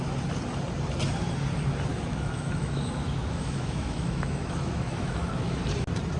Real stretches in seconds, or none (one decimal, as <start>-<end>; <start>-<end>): 0.0-1.9; 5.6-6.2